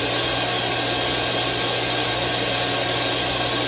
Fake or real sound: real